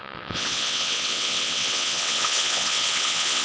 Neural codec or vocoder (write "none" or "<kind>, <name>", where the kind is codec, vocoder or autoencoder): vocoder, WaveNeXt